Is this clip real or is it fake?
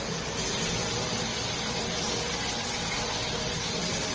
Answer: real